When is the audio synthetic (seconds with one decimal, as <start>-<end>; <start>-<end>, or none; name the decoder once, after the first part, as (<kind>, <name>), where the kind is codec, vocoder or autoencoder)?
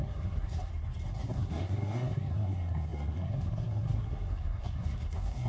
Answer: 0.0-0.7 (codec, SNAC); 1.2-5.5